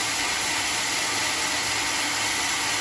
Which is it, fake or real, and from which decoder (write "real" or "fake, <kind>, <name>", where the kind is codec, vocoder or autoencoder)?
real